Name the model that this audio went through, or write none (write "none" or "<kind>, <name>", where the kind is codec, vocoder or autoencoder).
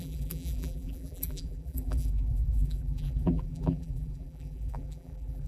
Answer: vocoder, BigVGAN v2